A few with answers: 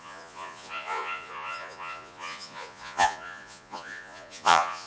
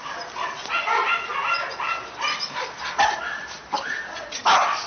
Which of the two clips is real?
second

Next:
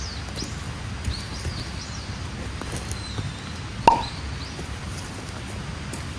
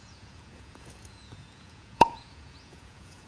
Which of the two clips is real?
first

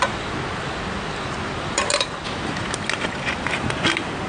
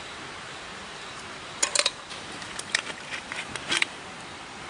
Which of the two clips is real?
first